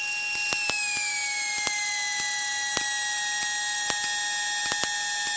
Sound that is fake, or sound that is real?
real